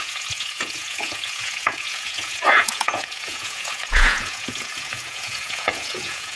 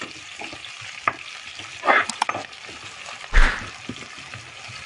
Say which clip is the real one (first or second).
second